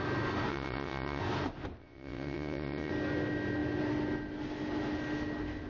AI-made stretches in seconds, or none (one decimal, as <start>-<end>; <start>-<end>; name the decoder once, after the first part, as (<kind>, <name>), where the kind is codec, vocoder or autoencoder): 0.5-1.2 (vocoder, WaveNeXt); 1.8-2.9